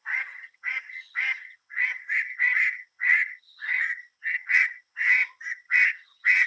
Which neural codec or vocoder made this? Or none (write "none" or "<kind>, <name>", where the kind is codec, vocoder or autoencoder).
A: vocoder, HiFi-GAN